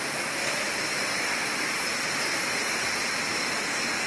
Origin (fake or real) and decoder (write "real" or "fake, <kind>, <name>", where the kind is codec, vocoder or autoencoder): real